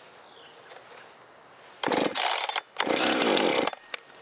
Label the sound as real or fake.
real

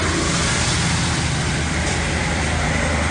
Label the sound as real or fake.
real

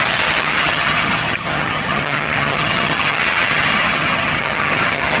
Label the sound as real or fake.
fake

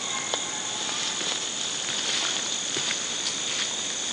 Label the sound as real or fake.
real